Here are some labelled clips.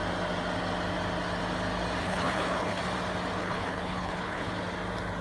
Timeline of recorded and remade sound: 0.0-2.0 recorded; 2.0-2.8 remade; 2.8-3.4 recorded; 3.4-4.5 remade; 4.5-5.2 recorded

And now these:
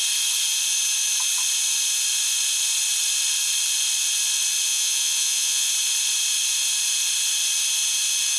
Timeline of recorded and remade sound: 0.0-4.7 recorded; 4.7-5.7 remade; 5.7-8.4 recorded